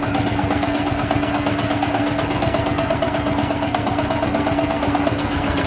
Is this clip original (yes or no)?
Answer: no